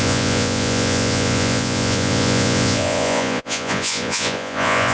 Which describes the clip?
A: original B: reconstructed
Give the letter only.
B